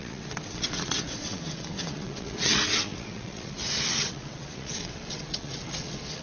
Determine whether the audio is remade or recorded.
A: remade